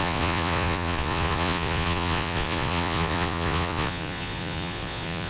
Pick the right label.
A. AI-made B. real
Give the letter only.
A